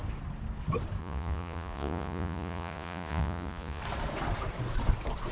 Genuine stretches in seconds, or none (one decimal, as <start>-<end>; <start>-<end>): 0.0-1.0; 3.8-5.3